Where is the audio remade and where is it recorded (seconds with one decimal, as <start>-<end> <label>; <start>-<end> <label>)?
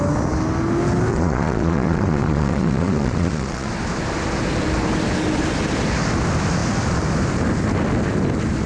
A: 0.0-1.1 recorded; 1.1-3.7 remade; 3.7-8.7 recorded